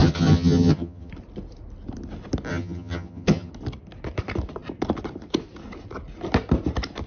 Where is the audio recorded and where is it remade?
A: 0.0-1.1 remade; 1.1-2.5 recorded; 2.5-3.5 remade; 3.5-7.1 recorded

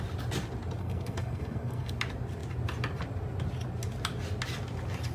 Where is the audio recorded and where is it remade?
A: 0.0-0.8 recorded; 0.8-1.9 remade; 1.9-5.1 recorded

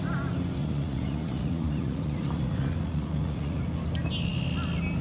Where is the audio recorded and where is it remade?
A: 0.0-0.6 recorded; 0.6-3.6 remade; 3.6-5.0 recorded

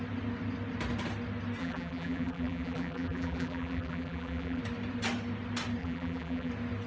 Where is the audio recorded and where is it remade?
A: 0.0-1.6 recorded; 1.6-4.6 remade; 4.6-5.8 recorded; 5.8-6.5 remade; 6.5-6.9 recorded

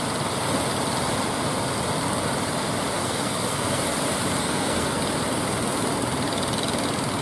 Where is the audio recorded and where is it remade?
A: 0.0-3.0 recorded; 3.0-3.8 remade; 3.8-4.4 recorded; 4.4-5.0 remade; 5.0-7.2 recorded

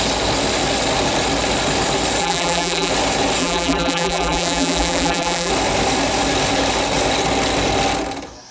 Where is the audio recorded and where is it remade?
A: 0.0-2.2 recorded; 2.2-2.9 remade; 2.9-3.4 recorded; 3.4-5.5 remade; 5.5-8.5 recorded

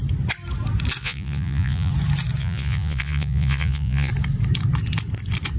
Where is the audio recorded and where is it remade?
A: 0.0-1.0 recorded; 1.0-1.9 remade; 1.9-2.4 recorded; 2.4-4.1 remade; 4.1-5.6 recorded

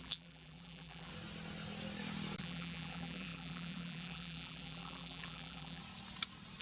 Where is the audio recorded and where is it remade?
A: 0.0-1.1 remade; 1.1-2.4 recorded; 2.4-5.8 remade; 5.8-6.6 recorded